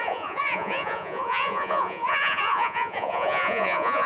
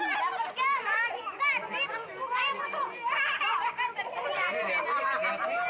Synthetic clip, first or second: first